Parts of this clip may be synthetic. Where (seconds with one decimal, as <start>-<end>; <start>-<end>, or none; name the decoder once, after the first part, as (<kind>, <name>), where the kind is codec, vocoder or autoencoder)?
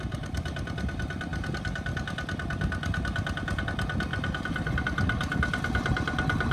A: none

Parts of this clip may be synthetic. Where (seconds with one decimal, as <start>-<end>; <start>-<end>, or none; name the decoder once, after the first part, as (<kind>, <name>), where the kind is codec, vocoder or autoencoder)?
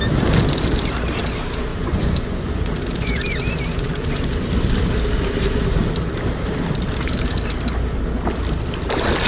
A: 1.7-3.2 (vocoder, Vocos); 3.7-4.3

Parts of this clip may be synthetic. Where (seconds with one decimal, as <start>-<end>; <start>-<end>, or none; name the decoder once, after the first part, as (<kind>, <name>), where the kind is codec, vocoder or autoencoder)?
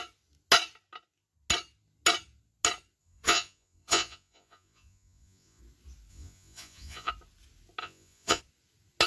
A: 3.0-5.6 (vocoder, Vocos); 6.1-7.1; 7.8-8.4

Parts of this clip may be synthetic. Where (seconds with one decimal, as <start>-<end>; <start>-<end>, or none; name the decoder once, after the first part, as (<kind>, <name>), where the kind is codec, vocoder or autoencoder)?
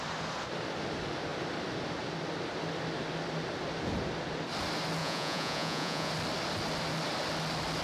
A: 5.0-6.1 (vocoder, Vocos)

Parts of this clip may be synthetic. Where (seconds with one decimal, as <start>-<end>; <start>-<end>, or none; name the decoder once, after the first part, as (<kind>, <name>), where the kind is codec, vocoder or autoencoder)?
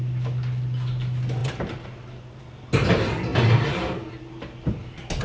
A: none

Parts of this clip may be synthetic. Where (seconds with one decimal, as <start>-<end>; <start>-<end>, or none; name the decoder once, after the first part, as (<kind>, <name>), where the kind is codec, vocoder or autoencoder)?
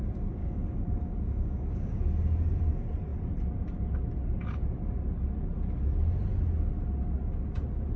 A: 0.4-2.0 (codec, DAC)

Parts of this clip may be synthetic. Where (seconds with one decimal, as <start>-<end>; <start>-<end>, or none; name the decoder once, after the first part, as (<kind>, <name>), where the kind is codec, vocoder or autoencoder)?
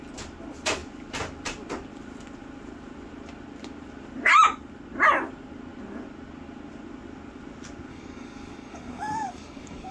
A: 7.9-9.9 (codec, DAC)